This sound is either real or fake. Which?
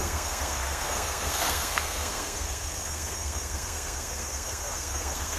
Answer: fake